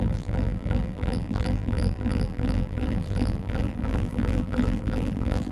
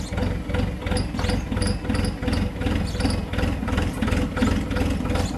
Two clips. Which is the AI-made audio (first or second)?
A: first